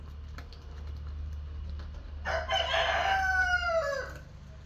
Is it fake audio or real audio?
real